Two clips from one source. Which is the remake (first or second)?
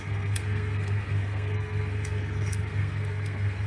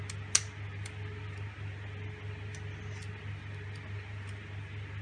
first